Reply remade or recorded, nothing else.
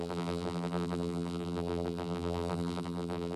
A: remade